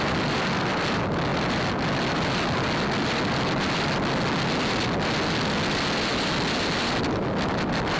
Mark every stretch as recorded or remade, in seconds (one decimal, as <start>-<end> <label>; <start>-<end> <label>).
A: 0.0-8.0 recorded

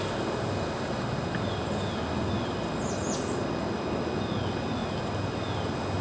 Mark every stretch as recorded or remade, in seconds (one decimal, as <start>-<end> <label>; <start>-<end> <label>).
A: 0.0-6.0 recorded

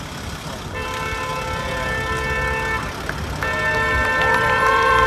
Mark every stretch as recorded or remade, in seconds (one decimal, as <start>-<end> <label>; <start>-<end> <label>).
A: 0.0-1.3 remade; 1.3-4.3 recorded; 4.3-5.1 remade

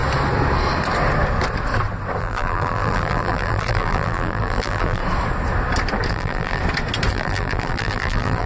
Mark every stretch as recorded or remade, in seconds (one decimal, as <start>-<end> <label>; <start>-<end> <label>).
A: 0.0-2.2 recorded; 2.2-5.0 remade; 5.0-6.1 recorded; 6.1-6.6 remade; 6.6-7.1 recorded; 7.1-8.5 remade

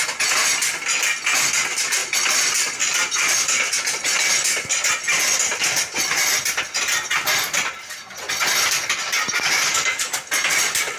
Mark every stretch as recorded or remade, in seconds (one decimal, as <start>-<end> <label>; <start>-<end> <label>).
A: 0.0-2.0 recorded; 2.0-4.0 remade; 4.0-11.0 recorded

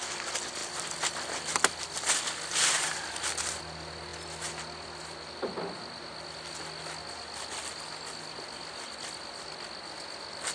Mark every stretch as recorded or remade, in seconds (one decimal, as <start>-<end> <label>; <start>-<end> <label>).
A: 0.0-0.6 recorded; 0.6-3.6 remade; 3.6-10.5 recorded

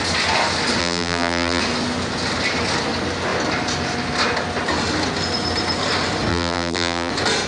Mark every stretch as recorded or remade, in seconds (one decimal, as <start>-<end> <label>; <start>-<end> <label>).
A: 0.0-0.8 recorded; 0.8-1.6 remade; 1.6-6.3 recorded; 6.3-7.1 remade; 7.1-7.5 recorded